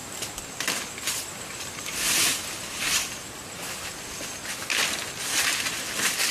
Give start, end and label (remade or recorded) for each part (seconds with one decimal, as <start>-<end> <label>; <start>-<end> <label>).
0.0-1.0 remade; 1.0-2.3 recorded; 2.3-3.6 remade; 3.6-6.3 recorded